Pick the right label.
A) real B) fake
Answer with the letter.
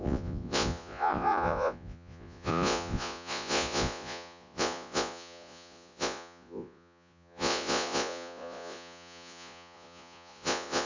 B